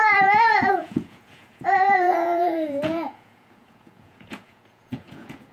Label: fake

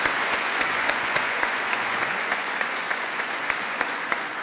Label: fake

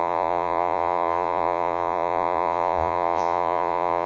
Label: fake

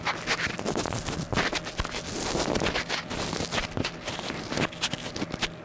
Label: real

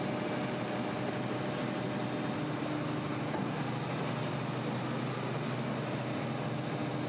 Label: real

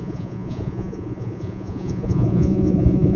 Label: fake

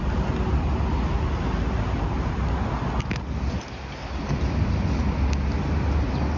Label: real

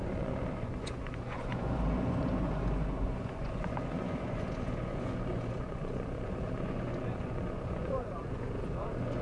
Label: fake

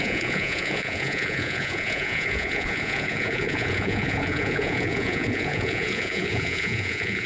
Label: fake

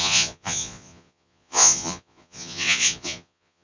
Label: fake